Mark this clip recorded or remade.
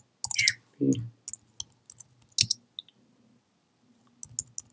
recorded